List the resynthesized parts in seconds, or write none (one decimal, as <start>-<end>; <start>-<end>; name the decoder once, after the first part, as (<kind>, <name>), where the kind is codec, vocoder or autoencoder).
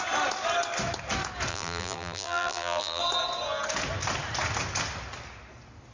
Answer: 1.5-3.0 (vocoder, BigVGAN v2)